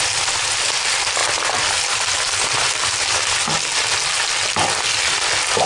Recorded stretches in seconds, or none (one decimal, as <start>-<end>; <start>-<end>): 0.0-5.7